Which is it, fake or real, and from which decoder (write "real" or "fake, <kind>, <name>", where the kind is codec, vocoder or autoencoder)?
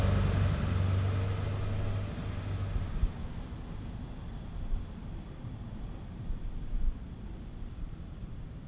real